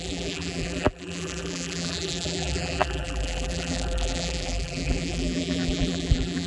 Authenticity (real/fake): fake